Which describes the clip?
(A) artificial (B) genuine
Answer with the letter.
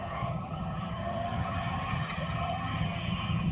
A